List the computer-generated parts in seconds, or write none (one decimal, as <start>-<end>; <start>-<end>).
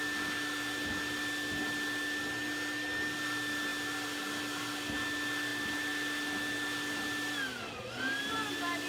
none